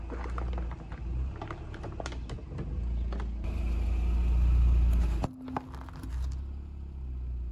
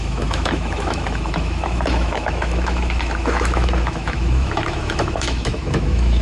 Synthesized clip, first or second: second